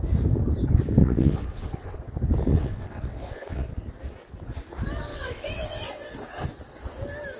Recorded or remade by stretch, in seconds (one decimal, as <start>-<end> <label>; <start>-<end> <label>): 0.0-1.0 recorded; 1.0-2.0 remade; 2.0-2.5 recorded; 2.5-3.7 remade; 3.7-5.1 recorded; 5.1-6.1 remade; 6.1-7.4 recorded